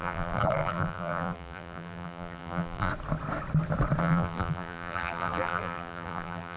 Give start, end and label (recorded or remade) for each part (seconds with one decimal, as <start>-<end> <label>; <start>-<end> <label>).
0.0-2.9 remade; 2.9-4.0 recorded; 4.0-6.6 remade